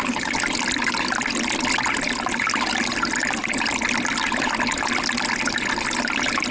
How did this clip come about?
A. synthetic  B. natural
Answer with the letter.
B